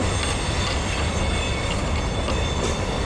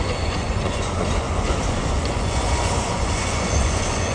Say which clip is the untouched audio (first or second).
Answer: first